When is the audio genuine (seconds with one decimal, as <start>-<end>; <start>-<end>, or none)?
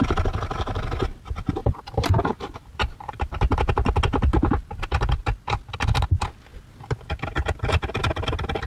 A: 0.0-1.6; 3.4-8.7